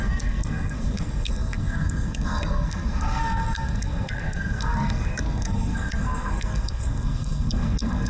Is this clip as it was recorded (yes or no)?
no